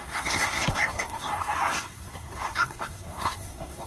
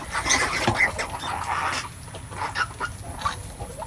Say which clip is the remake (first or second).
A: first